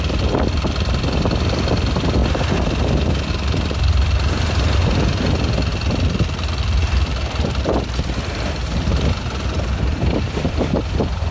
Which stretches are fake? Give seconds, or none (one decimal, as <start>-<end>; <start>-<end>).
0.0-2.2; 3.3-11.3